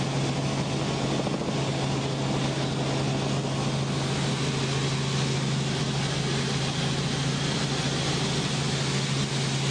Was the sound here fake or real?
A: real